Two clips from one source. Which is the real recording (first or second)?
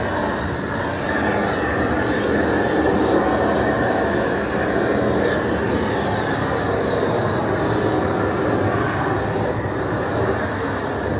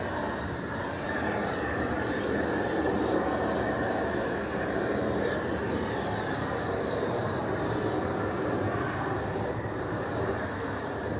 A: first